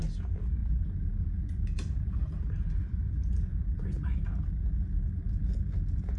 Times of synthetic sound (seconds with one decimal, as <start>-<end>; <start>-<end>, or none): 3.5-4.3